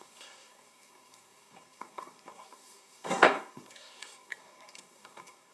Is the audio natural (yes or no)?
no